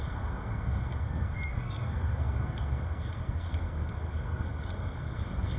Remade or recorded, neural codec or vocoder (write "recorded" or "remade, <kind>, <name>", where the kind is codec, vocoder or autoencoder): remade, codec, SNAC